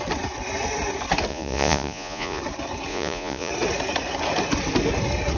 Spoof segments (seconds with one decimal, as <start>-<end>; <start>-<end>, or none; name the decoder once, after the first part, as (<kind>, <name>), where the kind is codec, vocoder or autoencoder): 1.3-2.4 (vocoder, Vocos); 2.9-3.5